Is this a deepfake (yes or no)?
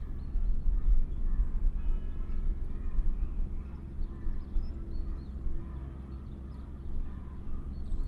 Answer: no